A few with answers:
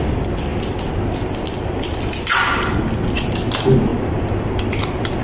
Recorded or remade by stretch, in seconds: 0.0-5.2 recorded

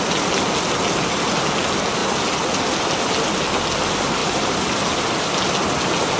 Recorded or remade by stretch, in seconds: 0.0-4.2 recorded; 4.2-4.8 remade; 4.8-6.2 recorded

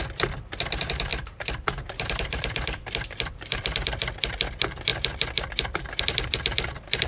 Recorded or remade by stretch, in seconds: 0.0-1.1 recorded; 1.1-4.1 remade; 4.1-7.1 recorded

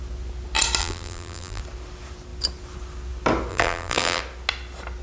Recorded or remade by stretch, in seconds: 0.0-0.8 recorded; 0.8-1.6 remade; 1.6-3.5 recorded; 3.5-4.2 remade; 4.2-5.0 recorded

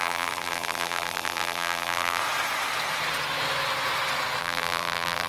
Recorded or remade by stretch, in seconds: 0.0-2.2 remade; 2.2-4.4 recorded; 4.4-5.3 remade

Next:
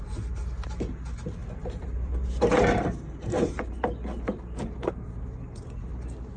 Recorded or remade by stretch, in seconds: 0.0-1.4 recorded; 1.4-5.2 remade; 5.2-6.4 recorded

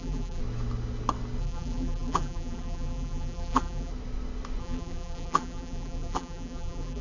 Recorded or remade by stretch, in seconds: 0.0-0.4 remade; 0.4-1.4 recorded; 1.4-3.9 remade; 3.9-4.6 recorded; 4.6-7.0 remade